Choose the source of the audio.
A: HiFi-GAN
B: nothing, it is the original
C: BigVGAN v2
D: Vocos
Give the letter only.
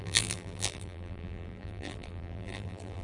C